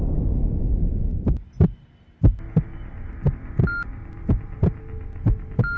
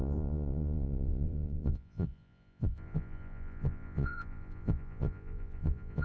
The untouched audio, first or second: first